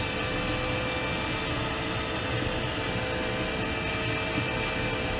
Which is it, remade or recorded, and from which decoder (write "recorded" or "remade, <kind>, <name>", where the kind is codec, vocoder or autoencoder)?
recorded